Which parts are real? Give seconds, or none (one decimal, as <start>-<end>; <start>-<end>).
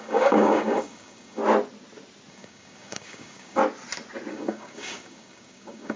1.4-2.3; 3.6-4.3